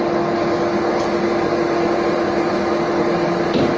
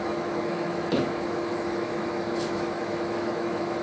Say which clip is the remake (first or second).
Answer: second